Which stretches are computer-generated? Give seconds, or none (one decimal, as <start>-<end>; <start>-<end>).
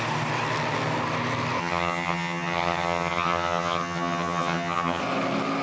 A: 1.6-5.0